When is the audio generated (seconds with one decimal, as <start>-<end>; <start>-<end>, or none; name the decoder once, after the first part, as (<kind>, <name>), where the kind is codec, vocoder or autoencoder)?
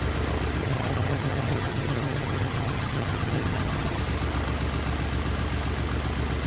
0.6-4.0 (vocoder, HiFi-GAN)